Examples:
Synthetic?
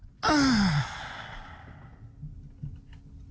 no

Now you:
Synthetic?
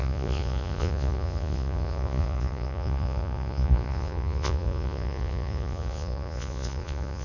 yes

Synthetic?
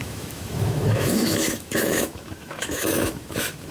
yes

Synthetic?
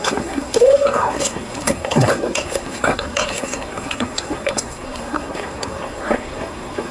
yes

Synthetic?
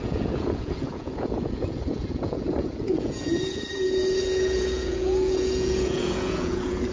yes